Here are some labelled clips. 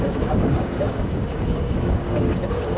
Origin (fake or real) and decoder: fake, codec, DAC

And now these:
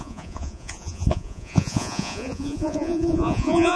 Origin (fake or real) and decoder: fake, vocoder, Vocos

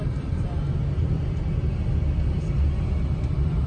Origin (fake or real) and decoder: real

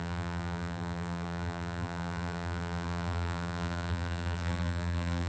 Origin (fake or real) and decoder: fake, vocoder, BigVGAN v2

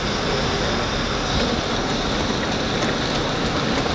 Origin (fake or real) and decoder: real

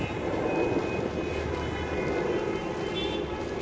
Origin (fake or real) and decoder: real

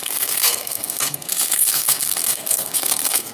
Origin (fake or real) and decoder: fake, codec, SNAC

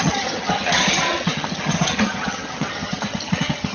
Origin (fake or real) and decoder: fake, vocoder, HiFi-GAN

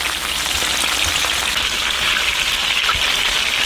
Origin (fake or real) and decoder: real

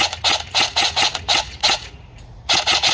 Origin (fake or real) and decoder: fake, vocoder, Vocos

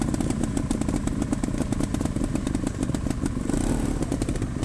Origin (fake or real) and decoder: real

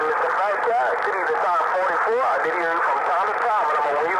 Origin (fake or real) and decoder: real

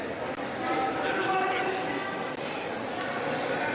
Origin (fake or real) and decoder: real